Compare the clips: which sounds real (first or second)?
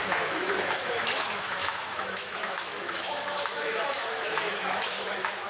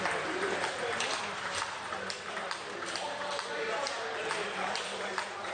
second